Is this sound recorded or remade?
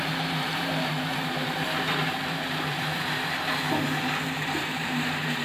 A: remade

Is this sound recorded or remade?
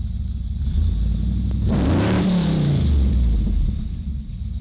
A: remade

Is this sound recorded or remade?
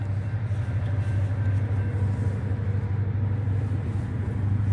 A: recorded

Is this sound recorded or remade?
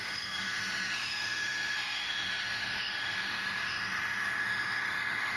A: remade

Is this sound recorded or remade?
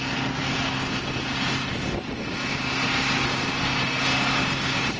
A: recorded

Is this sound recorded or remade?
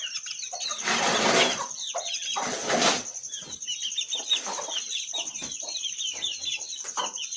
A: recorded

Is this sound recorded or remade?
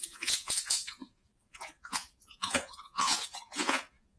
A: remade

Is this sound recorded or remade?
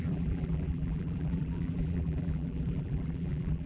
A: remade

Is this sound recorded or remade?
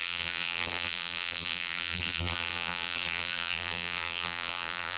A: remade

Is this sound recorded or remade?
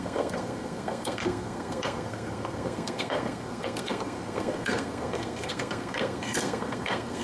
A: remade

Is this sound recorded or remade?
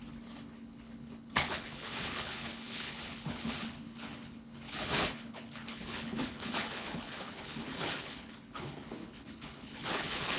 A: remade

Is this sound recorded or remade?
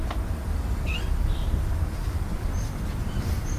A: recorded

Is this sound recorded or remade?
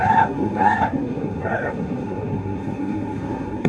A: remade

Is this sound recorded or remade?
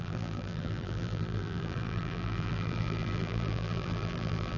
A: remade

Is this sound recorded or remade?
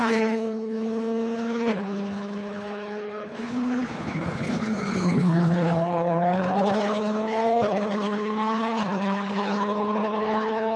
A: remade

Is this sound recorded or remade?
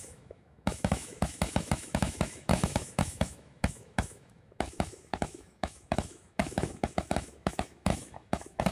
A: remade